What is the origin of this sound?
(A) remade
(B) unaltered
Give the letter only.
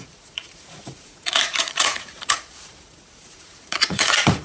A